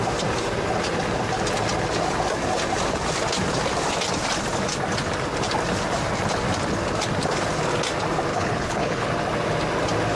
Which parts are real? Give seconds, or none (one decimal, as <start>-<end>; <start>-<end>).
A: 0.0-8.3; 9.1-10.2